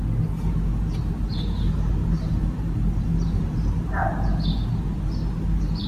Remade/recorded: recorded